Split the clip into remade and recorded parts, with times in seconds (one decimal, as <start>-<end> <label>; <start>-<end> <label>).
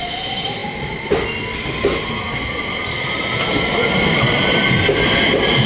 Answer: 0.0-5.7 recorded